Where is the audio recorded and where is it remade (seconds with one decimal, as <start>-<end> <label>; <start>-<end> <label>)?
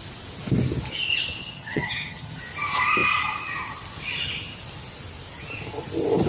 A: 0.0-1.4 recorded; 1.4-2.4 remade; 2.4-6.3 recorded